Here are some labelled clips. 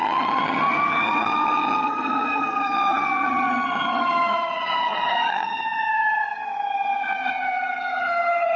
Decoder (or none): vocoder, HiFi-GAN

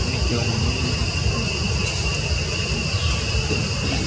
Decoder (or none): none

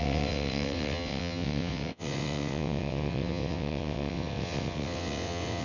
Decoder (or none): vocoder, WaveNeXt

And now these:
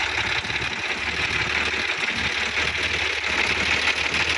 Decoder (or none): none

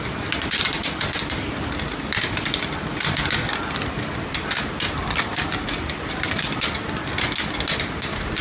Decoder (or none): none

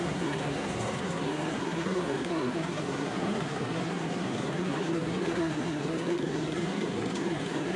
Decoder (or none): codec, SNAC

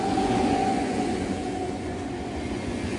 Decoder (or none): vocoder, Vocos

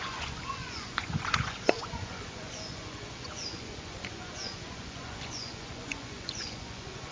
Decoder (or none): vocoder, Vocos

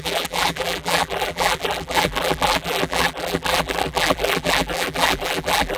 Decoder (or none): vocoder, BigVGAN v2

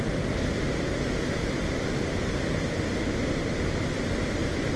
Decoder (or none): none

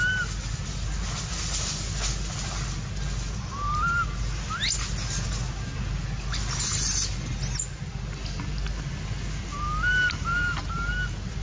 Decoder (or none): none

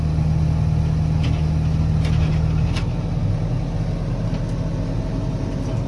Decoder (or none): none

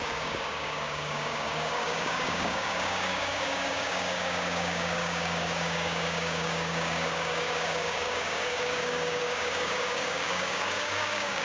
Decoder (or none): codec, DAC